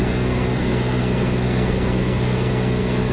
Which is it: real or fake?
fake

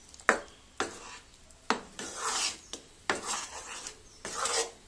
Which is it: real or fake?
real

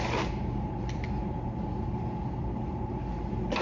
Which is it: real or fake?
real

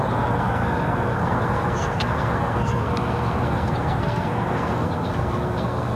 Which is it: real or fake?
fake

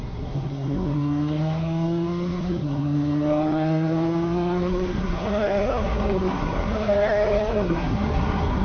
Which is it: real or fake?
fake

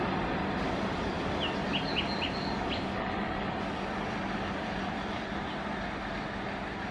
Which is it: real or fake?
real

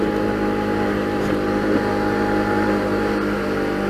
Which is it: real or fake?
real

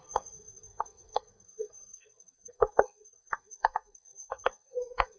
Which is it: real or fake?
fake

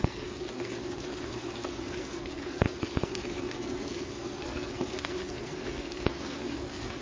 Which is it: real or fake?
fake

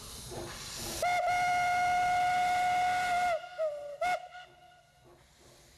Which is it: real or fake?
real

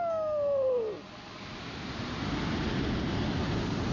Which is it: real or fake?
real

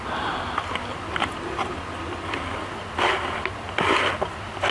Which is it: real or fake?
real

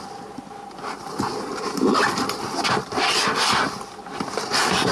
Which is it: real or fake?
real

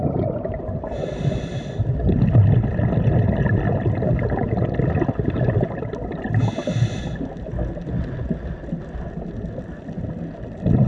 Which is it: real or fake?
real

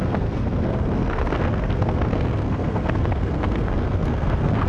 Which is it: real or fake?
fake